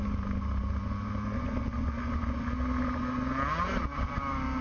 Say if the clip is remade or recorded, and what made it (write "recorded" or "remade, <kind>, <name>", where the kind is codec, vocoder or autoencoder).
recorded